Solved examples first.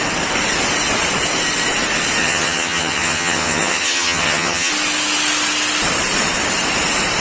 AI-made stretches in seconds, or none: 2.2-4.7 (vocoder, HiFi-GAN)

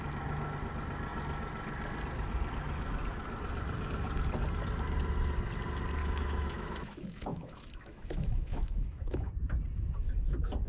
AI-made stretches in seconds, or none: 6.0-9.3 (autoencoder, DAC-VAE)

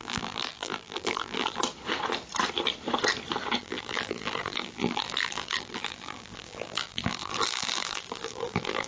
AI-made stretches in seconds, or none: 0.0-1.6 (vocoder, BigVGAN v2); 3.6-8.9

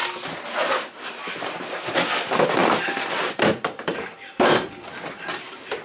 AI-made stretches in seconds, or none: 2.6-5.0 (vocoder, BigVGAN v2)

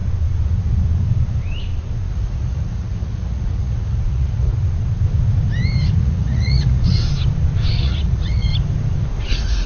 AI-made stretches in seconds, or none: 2.1-4.5 (vocoder, Vocos); 6.0-7.0; 7.7-8.5; 9.2-9.7

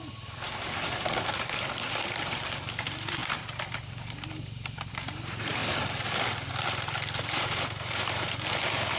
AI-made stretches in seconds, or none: 0.0-5.6 (vocoder, BigVGAN v2); 6.5-9.0

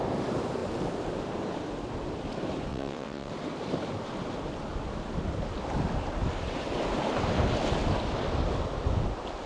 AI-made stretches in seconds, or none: 2.7-3.3 (vocoder, WaveNeXt)